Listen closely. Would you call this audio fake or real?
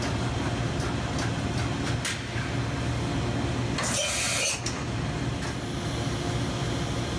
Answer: real